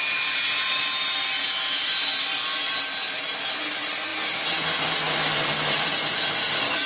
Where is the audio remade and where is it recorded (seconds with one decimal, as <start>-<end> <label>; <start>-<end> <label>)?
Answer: 0.0-6.9 recorded